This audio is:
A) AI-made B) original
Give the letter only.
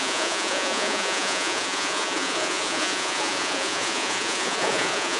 A